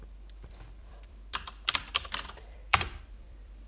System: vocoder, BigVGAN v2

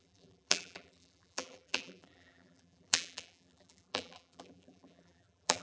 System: vocoder, BigVGAN v2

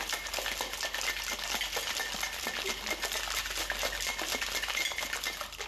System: none